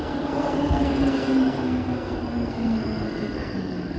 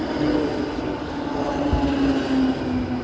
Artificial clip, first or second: first